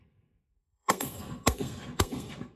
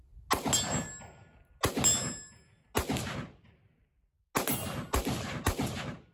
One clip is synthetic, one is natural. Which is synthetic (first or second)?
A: first